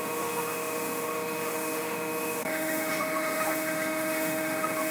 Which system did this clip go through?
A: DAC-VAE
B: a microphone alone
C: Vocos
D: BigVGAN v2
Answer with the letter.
A